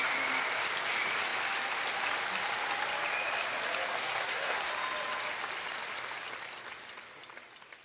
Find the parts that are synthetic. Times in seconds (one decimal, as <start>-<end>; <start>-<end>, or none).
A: 4.0-4.7